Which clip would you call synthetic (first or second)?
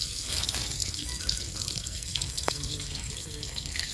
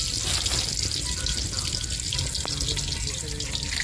first